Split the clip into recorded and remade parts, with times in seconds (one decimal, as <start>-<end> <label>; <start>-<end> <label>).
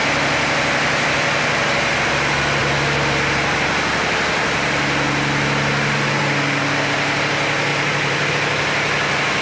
0.0-7.7 recorded; 7.7-8.3 remade; 8.3-9.4 recorded